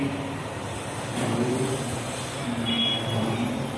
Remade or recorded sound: recorded